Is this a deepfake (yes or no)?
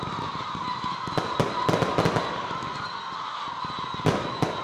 no